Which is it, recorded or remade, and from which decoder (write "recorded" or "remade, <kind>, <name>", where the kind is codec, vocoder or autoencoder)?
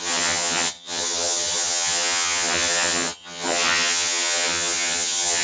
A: remade, vocoder, HiFi-GAN